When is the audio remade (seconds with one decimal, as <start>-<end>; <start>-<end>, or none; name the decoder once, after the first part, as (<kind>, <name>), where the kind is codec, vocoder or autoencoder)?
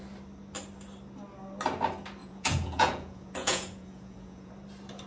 2.2-4.5 (vocoder, Vocos)